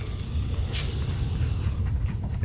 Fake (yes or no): no